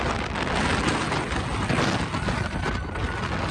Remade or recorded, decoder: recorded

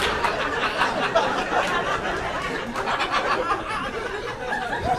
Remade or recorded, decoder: remade, vocoder, BigVGAN v2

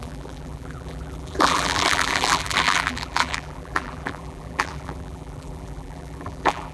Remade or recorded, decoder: remade, vocoder, BigVGAN v2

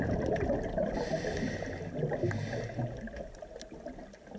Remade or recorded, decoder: recorded